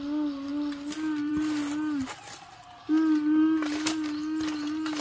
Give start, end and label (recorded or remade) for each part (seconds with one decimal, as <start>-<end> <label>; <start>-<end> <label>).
0.0-5.0 recorded